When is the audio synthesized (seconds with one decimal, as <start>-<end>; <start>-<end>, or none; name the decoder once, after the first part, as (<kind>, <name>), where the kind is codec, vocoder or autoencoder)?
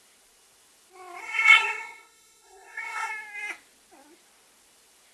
1.2-3.1 (codec, SNAC)